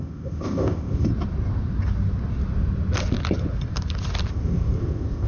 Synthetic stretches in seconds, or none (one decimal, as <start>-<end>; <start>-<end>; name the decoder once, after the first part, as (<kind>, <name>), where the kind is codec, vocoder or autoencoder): 0.0-1.1 (codec, ZipCodec); 4.3-5.3